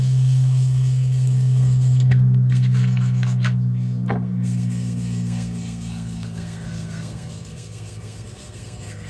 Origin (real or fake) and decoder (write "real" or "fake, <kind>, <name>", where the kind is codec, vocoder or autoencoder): fake, codec, SNAC